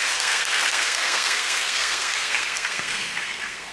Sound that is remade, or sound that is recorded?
remade